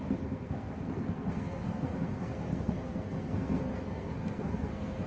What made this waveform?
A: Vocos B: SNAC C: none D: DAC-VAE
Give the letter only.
B